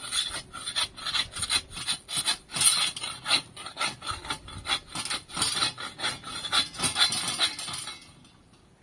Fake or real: real